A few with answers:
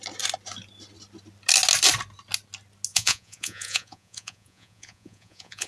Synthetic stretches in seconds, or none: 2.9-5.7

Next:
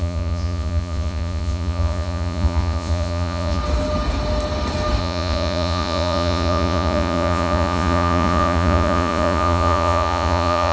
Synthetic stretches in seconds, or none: 0.0-3.6; 5.0-10.7

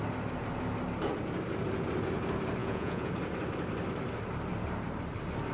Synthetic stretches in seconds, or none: 2.6-3.1

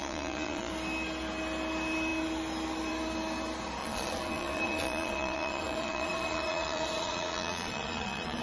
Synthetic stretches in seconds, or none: 0.0-0.7; 3.8-8.4

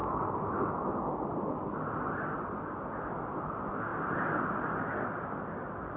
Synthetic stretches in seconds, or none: none